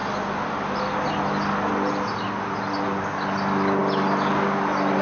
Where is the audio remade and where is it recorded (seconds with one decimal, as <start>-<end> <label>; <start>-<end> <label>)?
0.0-5.0 recorded